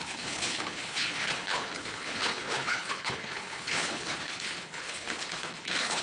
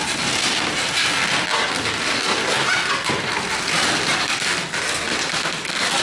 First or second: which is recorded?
second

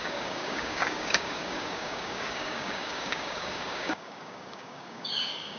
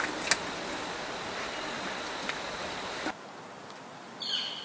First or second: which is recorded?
second